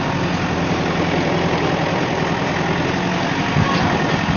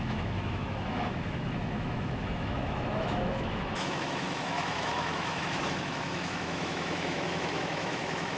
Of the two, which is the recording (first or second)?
first